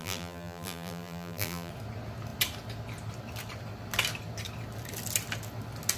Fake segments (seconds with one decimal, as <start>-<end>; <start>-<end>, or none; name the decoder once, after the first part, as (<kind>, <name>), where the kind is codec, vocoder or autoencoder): 0.0-1.7 (vocoder, BigVGAN v2)